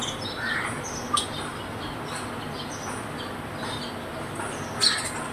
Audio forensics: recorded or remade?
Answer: recorded